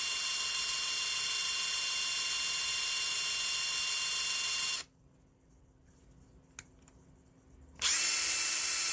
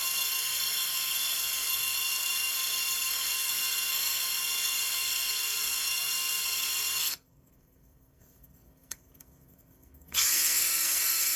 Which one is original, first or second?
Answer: first